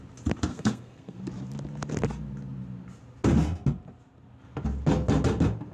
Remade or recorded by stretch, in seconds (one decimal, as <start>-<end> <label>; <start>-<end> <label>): 0.0-0.5 recorded; 0.5-1.2 remade; 1.2-5.7 recorded